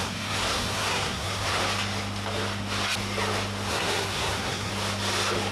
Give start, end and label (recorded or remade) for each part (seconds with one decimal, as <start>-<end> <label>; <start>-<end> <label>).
0.0-1.6 remade; 1.6-3.7 recorded; 3.7-4.7 remade; 4.7-5.5 recorded

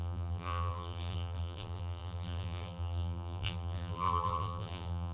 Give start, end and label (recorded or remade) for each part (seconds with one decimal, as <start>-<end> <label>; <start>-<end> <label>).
0.0-5.1 remade

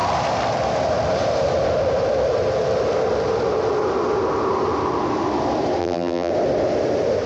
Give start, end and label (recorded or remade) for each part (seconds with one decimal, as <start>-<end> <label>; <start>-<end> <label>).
0.0-5.8 recorded; 5.8-6.3 remade; 6.3-7.3 recorded

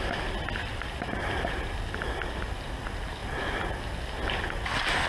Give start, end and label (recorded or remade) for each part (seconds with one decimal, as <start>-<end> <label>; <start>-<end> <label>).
0.0-0.7 recorded; 0.7-1.6 remade; 1.6-5.1 recorded

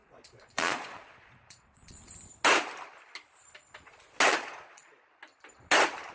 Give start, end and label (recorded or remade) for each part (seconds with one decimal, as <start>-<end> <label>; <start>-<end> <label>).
0.0-2.1 remade; 2.1-4.3 recorded; 4.3-5.2 remade; 5.2-6.1 recorded